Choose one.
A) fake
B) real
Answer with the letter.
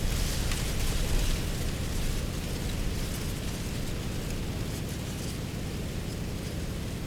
B